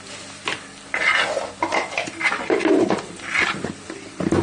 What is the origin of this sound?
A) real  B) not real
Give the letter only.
A